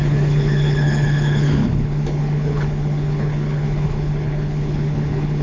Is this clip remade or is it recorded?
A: remade